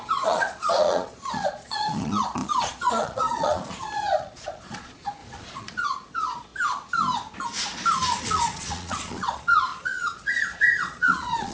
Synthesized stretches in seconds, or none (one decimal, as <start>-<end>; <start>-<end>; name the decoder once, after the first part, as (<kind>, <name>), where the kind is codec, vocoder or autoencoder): 0.0-6.5 (vocoder, Vocos); 8.2-11.5